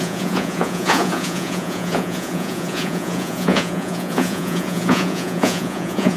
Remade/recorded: remade